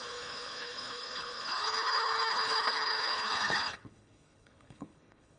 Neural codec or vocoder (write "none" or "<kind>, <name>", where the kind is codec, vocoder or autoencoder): codec, HILCodec